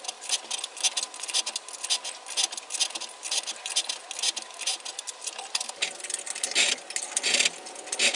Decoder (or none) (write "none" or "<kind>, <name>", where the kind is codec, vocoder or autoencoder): none